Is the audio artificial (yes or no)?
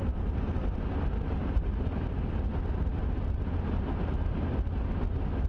no